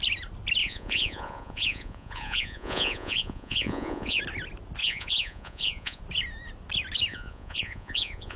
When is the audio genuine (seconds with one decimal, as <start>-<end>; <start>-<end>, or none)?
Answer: 0.0-0.6; 4.2-4.8; 6.0-7.1